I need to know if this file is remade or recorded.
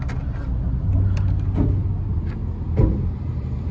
recorded